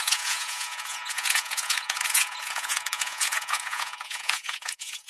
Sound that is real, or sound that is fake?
fake